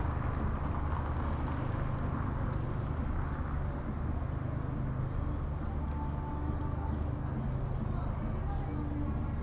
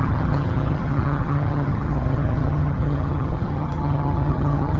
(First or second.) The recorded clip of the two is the first